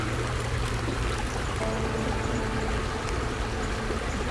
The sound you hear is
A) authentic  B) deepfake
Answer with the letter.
A